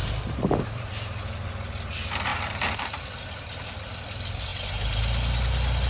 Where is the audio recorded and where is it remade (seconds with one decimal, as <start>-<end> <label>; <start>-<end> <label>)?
0.0-0.9 remade; 0.9-2.3 recorded; 2.3-3.0 remade; 3.0-5.9 recorded